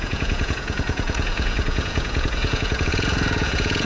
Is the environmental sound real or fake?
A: fake